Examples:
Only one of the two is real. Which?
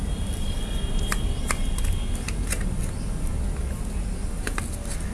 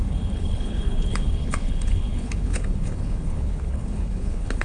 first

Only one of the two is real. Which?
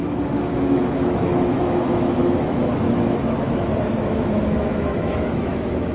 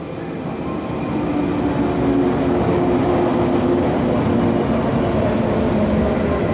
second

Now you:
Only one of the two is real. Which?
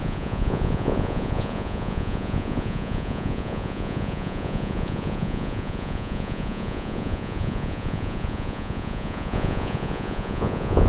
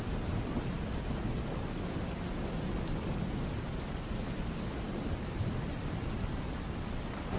second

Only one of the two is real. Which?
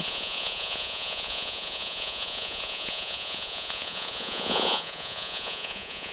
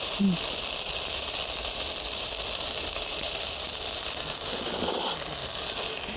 second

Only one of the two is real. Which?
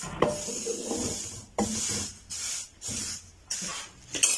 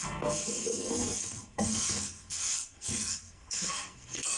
first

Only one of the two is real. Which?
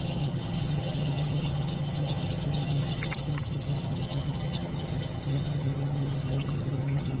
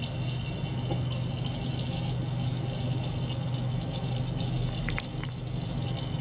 second